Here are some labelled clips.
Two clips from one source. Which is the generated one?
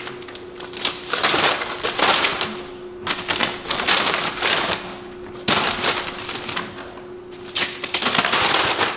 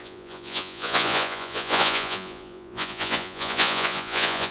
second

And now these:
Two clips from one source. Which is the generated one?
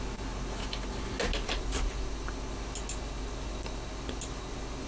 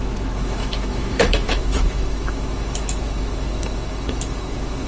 second